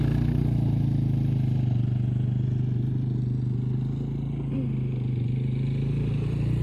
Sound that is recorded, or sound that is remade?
recorded